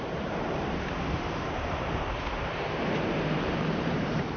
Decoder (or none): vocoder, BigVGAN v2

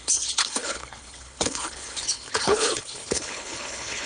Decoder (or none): codec, HILCodec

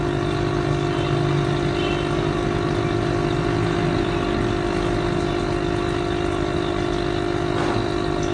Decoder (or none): none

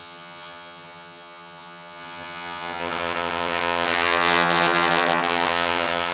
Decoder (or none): vocoder, HiFi-GAN